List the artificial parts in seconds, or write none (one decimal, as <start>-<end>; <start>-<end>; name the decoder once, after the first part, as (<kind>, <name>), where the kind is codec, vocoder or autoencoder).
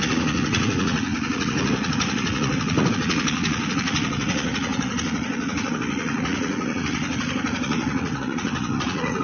0.0-9.2 (vocoder, Vocos)